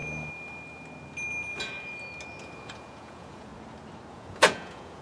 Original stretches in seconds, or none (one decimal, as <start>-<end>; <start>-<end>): 0.0-2.4; 3.5-4.1